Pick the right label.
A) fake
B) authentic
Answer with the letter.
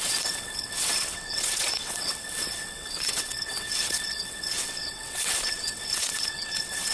A